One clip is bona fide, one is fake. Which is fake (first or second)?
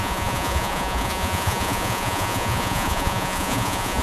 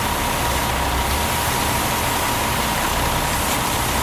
first